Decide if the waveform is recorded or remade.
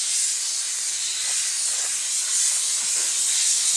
recorded